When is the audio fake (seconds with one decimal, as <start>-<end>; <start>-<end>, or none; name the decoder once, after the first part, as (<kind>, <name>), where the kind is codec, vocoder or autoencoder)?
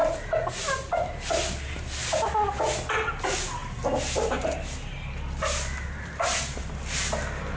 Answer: none